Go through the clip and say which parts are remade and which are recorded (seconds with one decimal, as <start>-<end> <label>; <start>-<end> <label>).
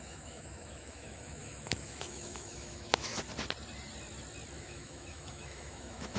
0.0-3.1 remade; 3.1-4.6 recorded; 4.6-6.2 remade